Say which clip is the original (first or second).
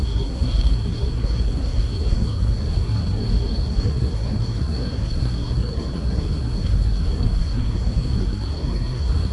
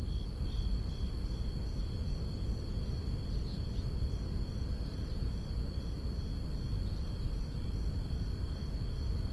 second